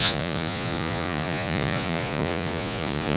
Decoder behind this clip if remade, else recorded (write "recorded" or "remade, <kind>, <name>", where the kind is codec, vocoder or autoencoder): remade, vocoder, Vocos